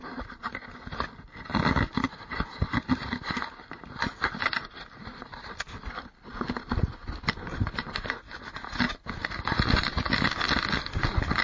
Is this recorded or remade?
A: recorded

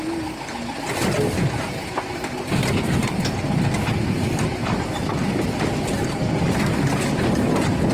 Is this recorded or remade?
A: recorded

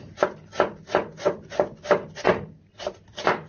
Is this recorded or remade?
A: recorded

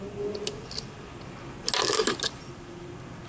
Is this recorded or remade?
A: recorded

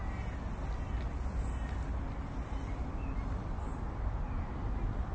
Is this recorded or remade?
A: recorded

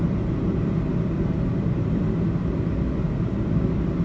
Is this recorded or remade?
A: recorded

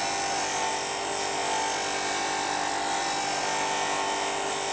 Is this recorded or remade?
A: recorded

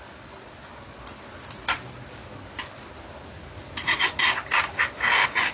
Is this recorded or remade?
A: recorded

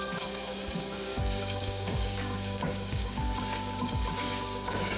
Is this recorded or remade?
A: remade